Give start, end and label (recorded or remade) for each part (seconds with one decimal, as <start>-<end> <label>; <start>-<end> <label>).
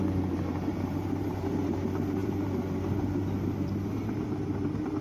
0.0-0.7 recorded; 0.7-1.5 remade; 1.5-2.2 recorded; 2.2-5.0 remade